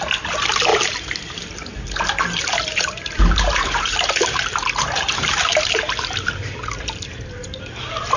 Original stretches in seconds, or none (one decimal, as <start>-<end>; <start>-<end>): 0.0-0.7; 1.5-2.7; 7.1-8.2